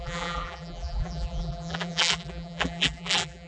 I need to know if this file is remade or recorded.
remade